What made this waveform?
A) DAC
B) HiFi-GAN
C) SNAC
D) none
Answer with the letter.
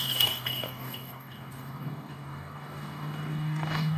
A